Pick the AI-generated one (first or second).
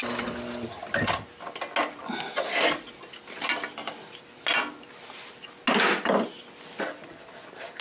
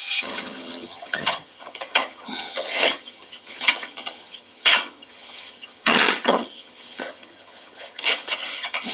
second